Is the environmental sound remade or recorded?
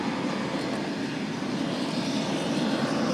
recorded